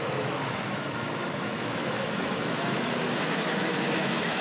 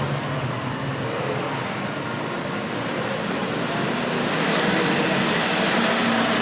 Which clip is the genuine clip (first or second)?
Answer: second